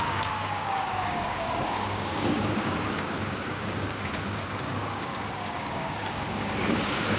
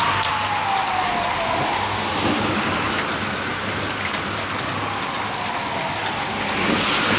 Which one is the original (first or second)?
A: second